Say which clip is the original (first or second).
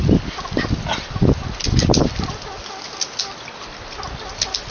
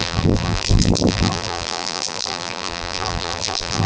first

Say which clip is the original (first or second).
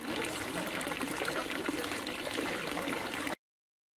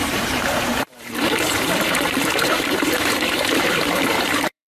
first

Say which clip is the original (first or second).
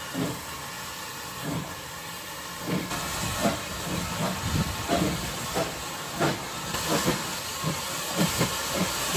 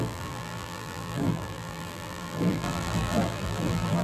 first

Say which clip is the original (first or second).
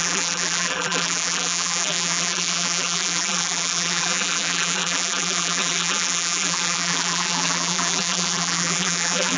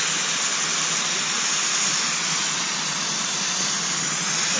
second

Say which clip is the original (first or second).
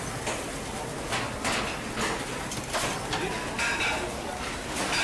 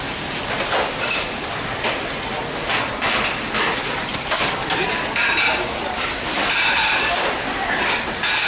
first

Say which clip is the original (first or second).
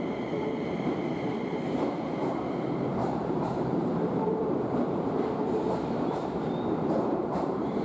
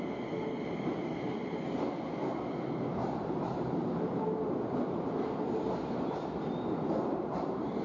second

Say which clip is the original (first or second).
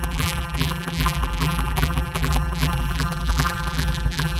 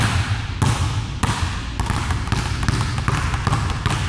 second